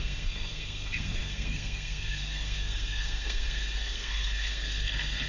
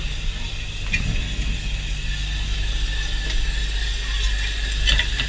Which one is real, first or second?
second